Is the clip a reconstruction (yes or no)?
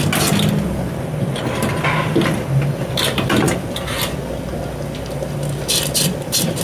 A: no